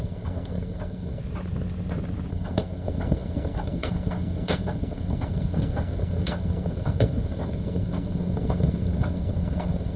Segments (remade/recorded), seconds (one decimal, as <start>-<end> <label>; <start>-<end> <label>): 0.0-1.2 remade; 1.2-2.3 recorded; 2.3-10.0 remade